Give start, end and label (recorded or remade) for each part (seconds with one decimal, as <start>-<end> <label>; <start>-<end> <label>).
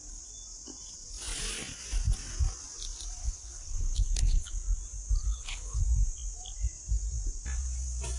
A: 0.0-3.2 recorded; 3.2-4.5 remade; 4.5-5.2 recorded; 5.2-5.8 remade; 5.8-8.2 recorded